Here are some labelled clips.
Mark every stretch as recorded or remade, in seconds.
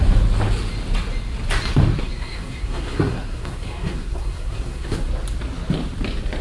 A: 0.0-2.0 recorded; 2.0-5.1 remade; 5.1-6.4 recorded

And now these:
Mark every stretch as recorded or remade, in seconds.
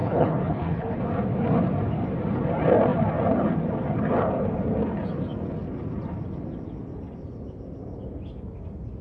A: 0.0-1.0 remade; 1.0-9.0 recorded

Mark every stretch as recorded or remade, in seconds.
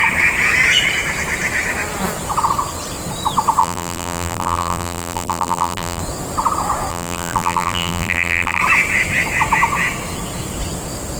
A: 0.0-3.6 recorded; 3.6-6.0 remade; 6.0-6.9 recorded; 6.9-8.6 remade; 8.6-11.2 recorded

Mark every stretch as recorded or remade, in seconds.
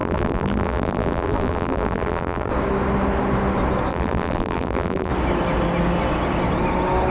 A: 0.0-2.5 remade; 2.5-3.9 recorded; 3.9-5.1 remade; 5.1-7.1 recorded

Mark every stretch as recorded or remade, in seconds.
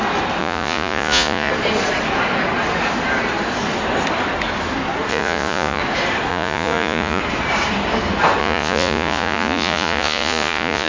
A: 0.0-0.4 recorded; 0.4-1.5 remade; 1.5-5.1 recorded; 5.1-5.8 remade; 5.8-6.3 recorded; 6.3-7.2 remade; 7.2-8.4 recorded; 8.4-10.9 remade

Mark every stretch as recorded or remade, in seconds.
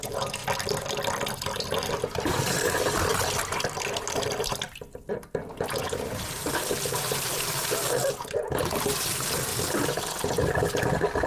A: 0.0-11.3 recorded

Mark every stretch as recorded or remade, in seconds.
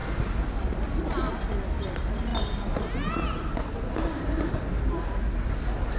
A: 0.0-6.0 recorded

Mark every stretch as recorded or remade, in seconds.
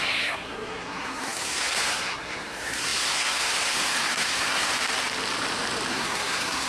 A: 0.0-4.7 remade; 4.7-5.9 recorded; 5.9-6.7 remade